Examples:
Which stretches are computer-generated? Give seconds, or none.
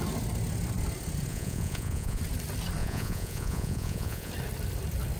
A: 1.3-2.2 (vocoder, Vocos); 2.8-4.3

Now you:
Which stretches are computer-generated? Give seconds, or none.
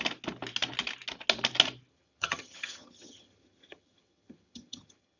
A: 1.9-5.2 (vocoder, HiFi-GAN)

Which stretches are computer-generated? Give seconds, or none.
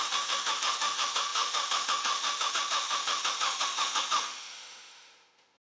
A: 0.0-5.8 (autoencoder, DAC-VAE)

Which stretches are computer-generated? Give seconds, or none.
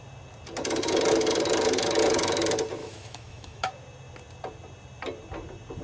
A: 2.8-3.7 (autoencoder, DAC-VAE)